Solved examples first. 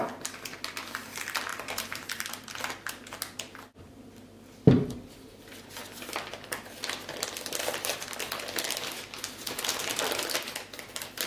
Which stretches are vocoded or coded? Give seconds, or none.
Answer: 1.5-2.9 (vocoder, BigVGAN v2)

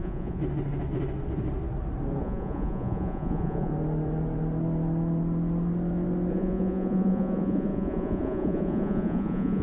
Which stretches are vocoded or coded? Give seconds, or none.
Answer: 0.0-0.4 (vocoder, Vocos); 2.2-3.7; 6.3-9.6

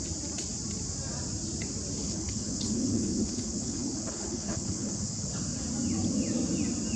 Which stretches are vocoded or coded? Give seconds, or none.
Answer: 2.0-5.3 (codec, HILCodec)